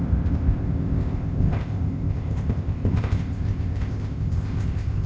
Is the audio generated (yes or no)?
yes